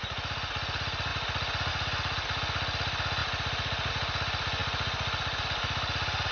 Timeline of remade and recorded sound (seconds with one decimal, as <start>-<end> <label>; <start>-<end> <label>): 0.0-6.3 recorded